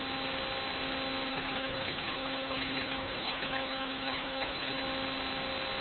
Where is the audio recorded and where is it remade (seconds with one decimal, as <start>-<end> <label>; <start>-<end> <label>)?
0.0-1.3 recorded; 1.3-4.8 remade; 4.8-5.8 recorded